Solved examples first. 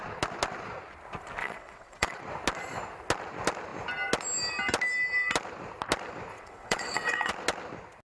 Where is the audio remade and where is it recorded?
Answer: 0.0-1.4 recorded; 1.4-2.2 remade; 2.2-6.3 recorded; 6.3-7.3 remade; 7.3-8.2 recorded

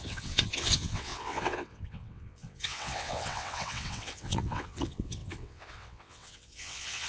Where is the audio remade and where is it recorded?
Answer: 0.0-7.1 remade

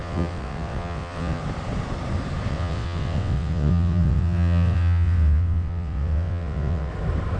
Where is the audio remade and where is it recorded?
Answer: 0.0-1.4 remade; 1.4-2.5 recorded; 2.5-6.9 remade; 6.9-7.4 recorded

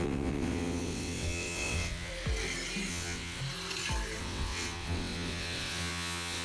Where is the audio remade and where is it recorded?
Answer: 0.0-2.1 remade; 2.1-2.9 recorded; 2.9-3.4 remade; 3.4-4.2 recorded; 4.2-6.4 remade

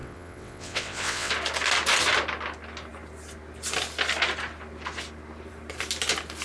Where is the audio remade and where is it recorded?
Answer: 0.0-1.3 remade; 1.3-6.4 recorded

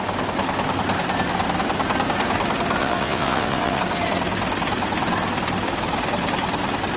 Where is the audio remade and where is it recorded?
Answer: 0.0-2.8 recorded; 2.8-3.8 remade; 3.8-7.0 recorded